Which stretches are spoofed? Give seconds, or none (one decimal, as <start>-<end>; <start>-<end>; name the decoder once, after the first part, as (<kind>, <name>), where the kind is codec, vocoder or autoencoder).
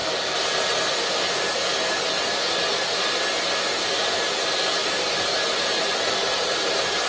4.8-5.7 (vocoder, BigVGAN v2)